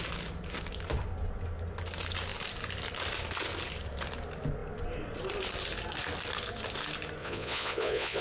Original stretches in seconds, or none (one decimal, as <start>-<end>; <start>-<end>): 0.0-7.2